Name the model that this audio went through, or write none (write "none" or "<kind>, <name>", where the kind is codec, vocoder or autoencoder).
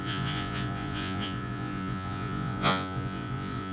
vocoder, Vocos